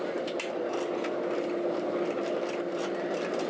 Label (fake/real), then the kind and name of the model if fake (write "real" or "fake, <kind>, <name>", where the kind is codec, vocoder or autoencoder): real